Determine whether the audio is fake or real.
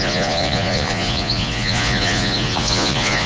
fake